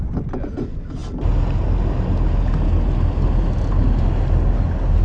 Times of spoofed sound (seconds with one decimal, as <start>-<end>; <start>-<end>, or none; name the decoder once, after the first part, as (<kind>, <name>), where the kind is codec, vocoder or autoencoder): none